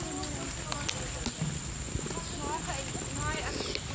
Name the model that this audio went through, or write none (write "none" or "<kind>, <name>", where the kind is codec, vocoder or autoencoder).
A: none